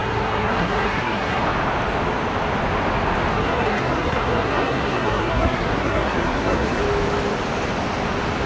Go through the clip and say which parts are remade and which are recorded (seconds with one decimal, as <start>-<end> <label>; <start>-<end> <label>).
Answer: 0.0-1.4 remade; 1.4-3.3 recorded; 3.3-6.8 remade; 6.8-8.5 recorded